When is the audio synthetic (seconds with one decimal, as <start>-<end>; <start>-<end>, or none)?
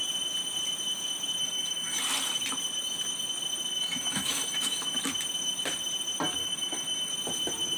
1.4-2.0; 3.7-5.0; 6.4-7.1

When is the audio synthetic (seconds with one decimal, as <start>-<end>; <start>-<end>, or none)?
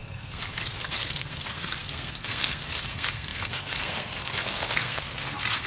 0.0-5.7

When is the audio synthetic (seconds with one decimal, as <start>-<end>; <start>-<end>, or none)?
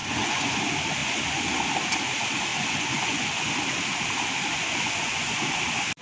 0.0-0.6; 1.0-1.6; 2.5-3.5; 4.5-5.6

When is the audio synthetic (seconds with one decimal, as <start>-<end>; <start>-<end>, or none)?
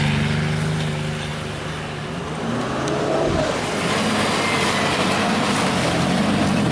none